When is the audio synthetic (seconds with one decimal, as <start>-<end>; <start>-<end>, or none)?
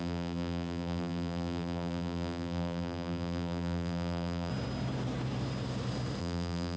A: 0.0-4.5; 6.2-6.8